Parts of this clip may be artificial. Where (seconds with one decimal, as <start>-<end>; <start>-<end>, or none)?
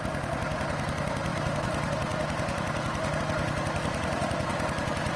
none